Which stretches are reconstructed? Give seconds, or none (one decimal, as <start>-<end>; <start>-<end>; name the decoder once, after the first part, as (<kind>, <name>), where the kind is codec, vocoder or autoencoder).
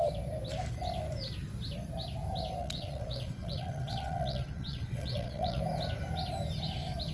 2.6-5.6 (vocoder, WaveNeXt)